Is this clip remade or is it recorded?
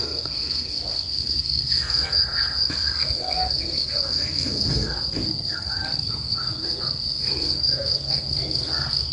remade